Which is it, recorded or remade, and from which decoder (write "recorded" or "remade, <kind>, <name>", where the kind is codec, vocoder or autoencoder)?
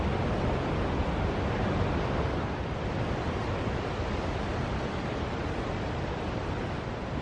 recorded